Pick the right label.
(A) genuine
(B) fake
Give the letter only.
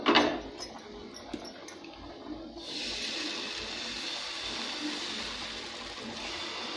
A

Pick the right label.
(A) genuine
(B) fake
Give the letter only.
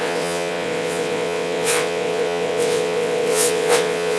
B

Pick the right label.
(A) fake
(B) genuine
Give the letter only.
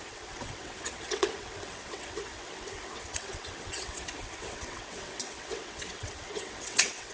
A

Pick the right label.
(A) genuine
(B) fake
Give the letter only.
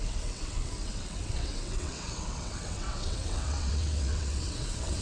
B